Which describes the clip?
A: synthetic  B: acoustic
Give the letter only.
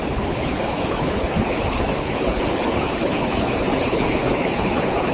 A